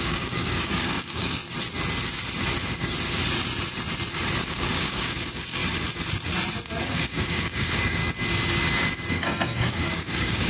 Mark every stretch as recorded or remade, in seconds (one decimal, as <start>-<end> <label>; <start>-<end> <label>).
0.0-1.4 remade; 1.4-4.4 recorded; 4.4-5.6 remade; 5.6-6.8 recorded; 6.8-8.0 remade; 8.0-9.1 recorded; 9.1-10.5 remade